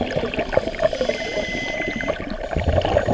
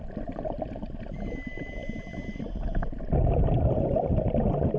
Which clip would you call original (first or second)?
second